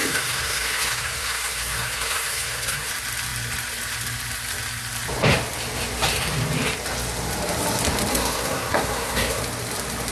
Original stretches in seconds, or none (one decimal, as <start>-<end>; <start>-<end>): 2.9-8.1; 9.4-10.1